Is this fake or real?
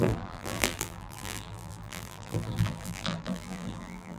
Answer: fake